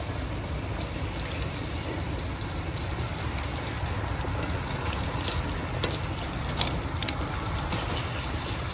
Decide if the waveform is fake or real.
real